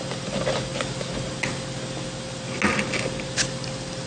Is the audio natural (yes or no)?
yes